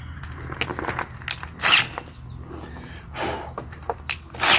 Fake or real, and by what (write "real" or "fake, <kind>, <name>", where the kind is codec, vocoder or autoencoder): real